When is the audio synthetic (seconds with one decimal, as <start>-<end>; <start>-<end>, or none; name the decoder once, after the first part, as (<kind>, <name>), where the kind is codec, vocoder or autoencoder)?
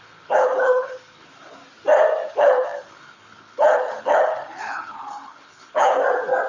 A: 0.0-1.6 (codec, HILCodec); 2.3-6.0